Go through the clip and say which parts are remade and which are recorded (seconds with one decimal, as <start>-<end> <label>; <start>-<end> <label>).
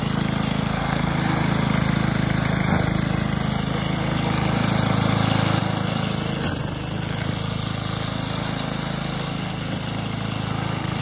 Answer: 0.0-0.5 recorded; 0.5-1.1 remade; 1.1-11.0 recorded